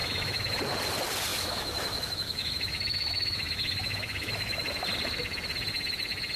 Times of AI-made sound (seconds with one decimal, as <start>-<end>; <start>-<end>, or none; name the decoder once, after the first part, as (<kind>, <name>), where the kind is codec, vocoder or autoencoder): 0.0-0.6 (autoencoder, DAC-VAE); 1.3-4.7